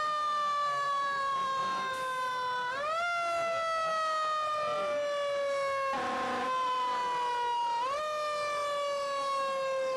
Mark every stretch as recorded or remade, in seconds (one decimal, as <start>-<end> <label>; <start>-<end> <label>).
0.0-1.6 remade; 1.6-6.4 recorded; 6.4-7.0 remade; 7.0-10.0 recorded